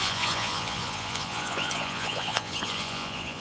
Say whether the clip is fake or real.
fake